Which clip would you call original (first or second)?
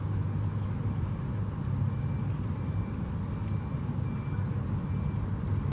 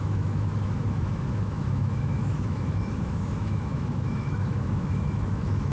first